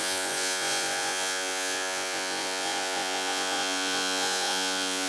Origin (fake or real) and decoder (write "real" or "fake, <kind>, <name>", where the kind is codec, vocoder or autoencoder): fake, vocoder, Vocos